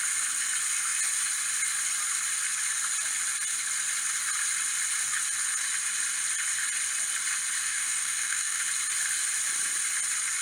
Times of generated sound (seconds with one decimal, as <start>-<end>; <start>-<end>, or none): 7.6-8.6

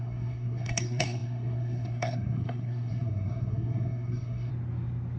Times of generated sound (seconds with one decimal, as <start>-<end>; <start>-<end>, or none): 0.0-4.5

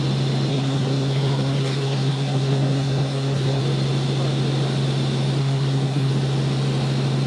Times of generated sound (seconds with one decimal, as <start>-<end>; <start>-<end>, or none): 0.5-3.6; 5.4-6.1